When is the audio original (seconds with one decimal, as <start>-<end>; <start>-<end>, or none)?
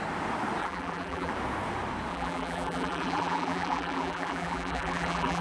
0.0-0.6; 1.3-2.1